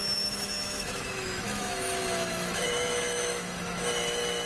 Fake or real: fake